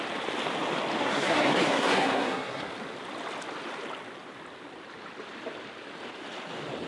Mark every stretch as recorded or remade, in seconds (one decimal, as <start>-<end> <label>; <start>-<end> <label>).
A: 0.0-1.0 recorded; 1.0-2.7 remade; 2.7-6.9 recorded